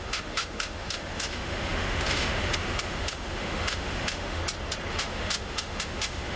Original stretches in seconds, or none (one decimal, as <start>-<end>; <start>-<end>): 4.4-4.9